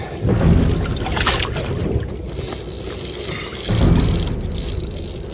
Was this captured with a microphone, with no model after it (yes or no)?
yes